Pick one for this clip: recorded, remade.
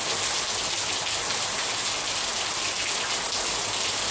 recorded